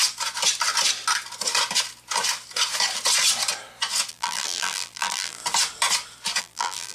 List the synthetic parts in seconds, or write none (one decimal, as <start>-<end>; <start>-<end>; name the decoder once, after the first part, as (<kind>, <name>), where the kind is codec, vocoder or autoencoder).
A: 4.1-5.4 (vocoder, BigVGAN v2); 6.4-6.9